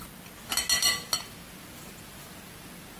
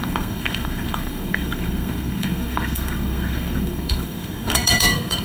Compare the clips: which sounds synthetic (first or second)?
second